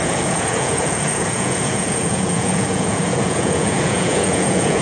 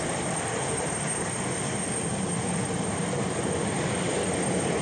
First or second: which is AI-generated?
first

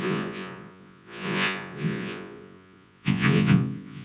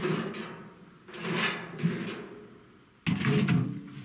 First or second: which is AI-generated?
first